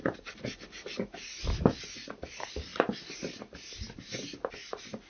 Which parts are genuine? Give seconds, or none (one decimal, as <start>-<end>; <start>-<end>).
0.0-5.1